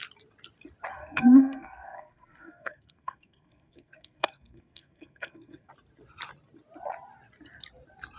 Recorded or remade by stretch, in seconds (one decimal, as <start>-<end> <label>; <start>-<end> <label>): 0.0-1.0 recorded; 1.0-5.7 remade; 5.7-8.2 recorded